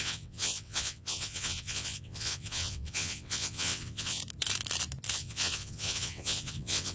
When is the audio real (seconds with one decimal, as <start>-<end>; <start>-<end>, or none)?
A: 4.2-5.1

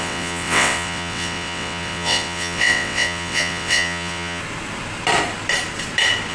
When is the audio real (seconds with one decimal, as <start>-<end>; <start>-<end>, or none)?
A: 4.4-6.3

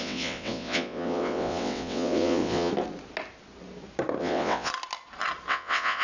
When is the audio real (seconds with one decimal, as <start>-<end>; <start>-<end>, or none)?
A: 2.7-4.2; 4.7-5.5

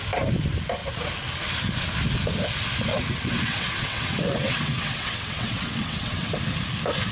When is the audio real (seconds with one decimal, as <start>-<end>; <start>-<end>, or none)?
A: 0.0-2.9; 6.4-7.1

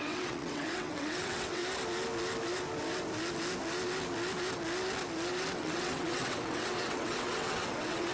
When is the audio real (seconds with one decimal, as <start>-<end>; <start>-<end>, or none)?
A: 1.6-5.5